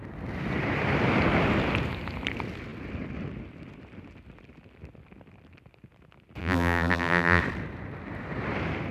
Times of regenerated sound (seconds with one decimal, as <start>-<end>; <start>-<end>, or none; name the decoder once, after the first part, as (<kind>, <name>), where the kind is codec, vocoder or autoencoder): 6.4-7.4 (vocoder, BigVGAN v2)